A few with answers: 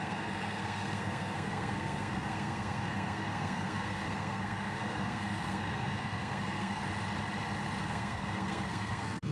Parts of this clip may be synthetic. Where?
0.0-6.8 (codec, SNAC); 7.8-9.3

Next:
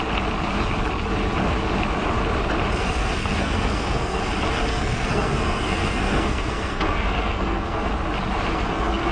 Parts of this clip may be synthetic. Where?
2.8-4.2 (codec, SNAC); 4.7-7.9; 8.5-9.1

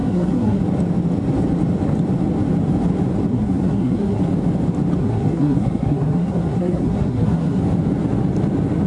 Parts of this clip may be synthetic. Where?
0.0-0.6 (codec, SNAC); 3.3-4.2; 5.0-7.6

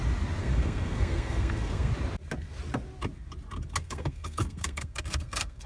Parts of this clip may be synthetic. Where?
0.4-1.9 (codec, SNAC); 3.8-5.7

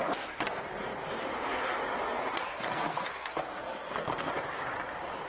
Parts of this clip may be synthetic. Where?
2.5-4.3 (codec, SNAC)